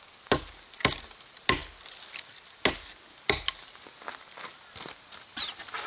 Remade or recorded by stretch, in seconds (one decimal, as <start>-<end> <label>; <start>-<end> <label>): 0.0-5.9 recorded